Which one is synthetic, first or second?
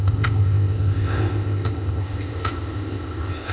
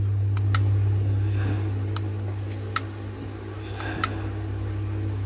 first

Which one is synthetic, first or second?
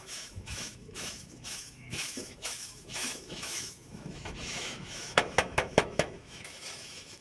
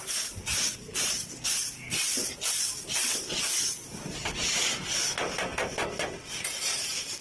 first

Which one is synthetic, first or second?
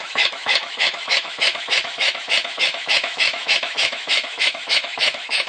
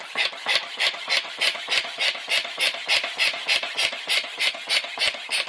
first